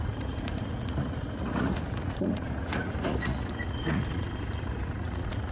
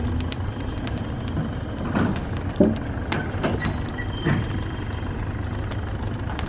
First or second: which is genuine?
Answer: second